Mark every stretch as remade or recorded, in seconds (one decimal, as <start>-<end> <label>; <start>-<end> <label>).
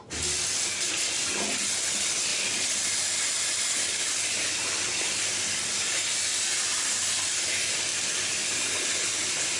0.0-2.3 recorded; 2.3-5.2 remade; 5.2-7.9 recorded; 7.9-8.8 remade; 8.8-9.6 recorded